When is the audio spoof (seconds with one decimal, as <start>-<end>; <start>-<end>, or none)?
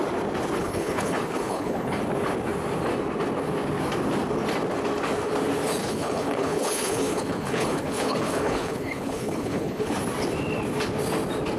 0.6-2.0; 5.8-9.9